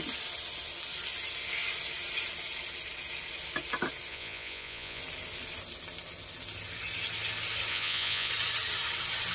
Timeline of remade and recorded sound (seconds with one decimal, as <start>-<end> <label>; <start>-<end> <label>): 0.0-4.1 recorded; 4.1-5.0 remade; 5.0-7.7 recorded; 7.7-8.3 remade; 8.3-9.3 recorded